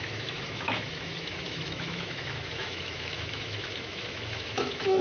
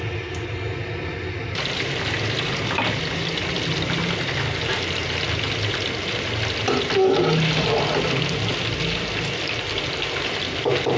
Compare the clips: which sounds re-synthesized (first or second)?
first